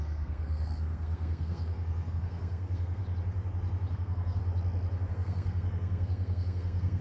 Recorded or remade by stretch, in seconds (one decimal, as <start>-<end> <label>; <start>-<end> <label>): 0.0-3.0 remade; 3.0-3.9 recorded; 3.9-4.4 remade; 4.4-5.1 recorded; 5.1-7.0 remade